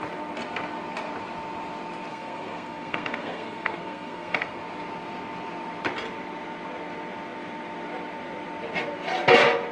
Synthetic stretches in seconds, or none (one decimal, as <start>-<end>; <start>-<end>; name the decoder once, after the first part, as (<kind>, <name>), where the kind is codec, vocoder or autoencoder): 2.1-4.6 (codec, SNAC)